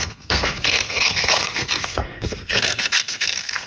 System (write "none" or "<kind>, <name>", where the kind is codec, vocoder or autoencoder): codec, SNAC